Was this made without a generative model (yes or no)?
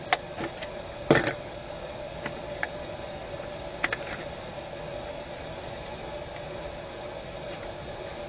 yes